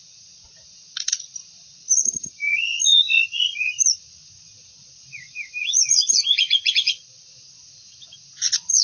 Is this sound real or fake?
fake